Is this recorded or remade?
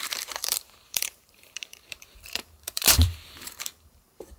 remade